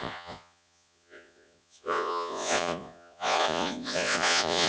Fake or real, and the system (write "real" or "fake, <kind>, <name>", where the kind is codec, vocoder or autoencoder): fake, vocoder, Vocos